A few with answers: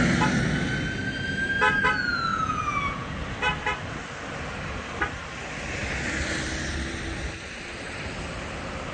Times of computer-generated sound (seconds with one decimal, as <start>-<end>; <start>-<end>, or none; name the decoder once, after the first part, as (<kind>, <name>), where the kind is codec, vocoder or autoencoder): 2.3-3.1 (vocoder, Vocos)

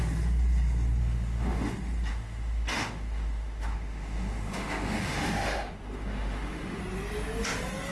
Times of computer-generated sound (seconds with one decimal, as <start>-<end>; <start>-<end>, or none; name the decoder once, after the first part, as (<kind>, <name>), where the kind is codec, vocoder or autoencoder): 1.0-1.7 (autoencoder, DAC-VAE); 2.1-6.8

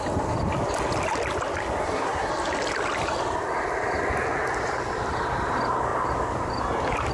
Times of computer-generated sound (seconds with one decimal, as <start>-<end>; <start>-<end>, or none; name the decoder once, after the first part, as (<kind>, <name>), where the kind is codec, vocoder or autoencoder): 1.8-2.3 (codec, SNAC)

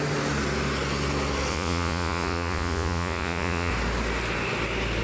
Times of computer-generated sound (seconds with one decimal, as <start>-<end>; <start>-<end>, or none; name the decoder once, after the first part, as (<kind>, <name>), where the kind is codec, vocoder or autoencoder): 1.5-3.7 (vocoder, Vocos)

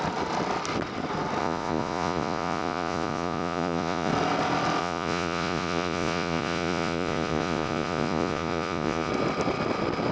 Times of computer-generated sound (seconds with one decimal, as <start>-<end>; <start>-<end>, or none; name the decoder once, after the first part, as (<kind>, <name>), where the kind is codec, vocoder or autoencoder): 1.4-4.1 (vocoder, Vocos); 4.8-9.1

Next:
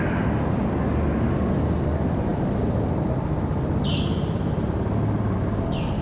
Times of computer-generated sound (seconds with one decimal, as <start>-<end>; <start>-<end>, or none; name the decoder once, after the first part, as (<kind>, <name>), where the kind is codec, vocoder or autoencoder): none

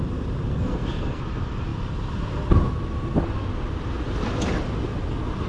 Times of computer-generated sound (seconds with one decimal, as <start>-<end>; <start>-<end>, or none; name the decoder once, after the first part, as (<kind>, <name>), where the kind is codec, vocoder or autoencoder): 0.5-1.2 (codec, SNAC)

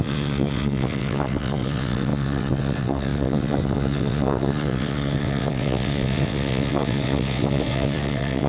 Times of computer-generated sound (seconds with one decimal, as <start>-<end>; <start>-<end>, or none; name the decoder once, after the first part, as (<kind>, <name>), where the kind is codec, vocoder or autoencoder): 0.0-8.5 (vocoder, WaveNeXt)